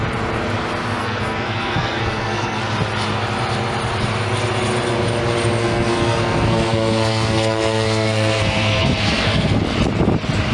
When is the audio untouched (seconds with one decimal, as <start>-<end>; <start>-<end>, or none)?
0.0-1.0; 2.6-5.6; 9.6-10.5